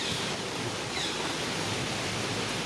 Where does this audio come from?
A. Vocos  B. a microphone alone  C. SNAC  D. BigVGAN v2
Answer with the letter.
D